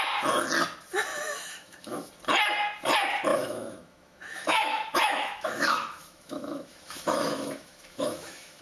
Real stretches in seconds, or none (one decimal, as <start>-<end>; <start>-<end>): 0.0-1.1; 2.1-3.3